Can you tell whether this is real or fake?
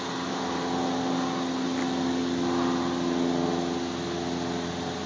real